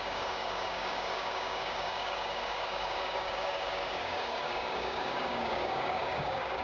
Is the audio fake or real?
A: fake